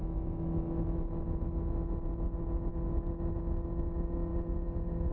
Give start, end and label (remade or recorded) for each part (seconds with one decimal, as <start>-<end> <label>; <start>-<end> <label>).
0.0-1.0 remade; 1.0-2.7 recorded; 2.7-3.4 remade; 3.4-5.1 recorded